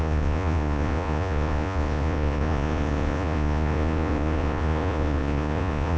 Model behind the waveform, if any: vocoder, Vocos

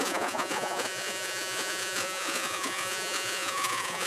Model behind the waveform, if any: vocoder, Vocos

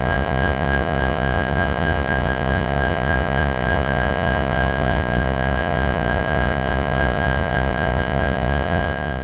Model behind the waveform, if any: vocoder, Vocos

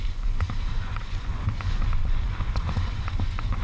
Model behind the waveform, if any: vocoder, Vocos